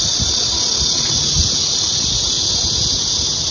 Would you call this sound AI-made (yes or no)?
no